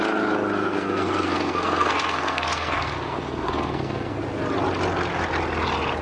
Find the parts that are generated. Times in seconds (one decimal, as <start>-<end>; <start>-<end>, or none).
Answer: 0.6-4.2